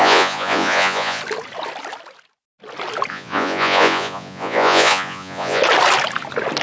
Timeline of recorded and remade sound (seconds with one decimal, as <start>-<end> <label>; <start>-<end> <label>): 0.0-1.2 remade; 1.2-3.1 recorded; 3.1-5.6 remade; 5.6-6.6 recorded